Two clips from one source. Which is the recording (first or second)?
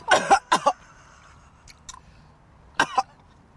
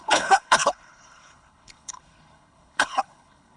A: first